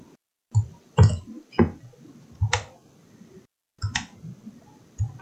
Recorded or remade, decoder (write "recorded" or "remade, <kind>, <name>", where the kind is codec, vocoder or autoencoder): recorded